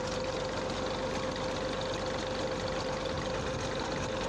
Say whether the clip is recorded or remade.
recorded